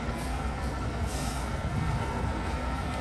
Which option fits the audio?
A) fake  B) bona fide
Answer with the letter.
A